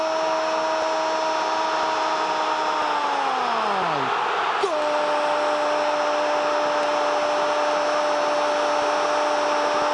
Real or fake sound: real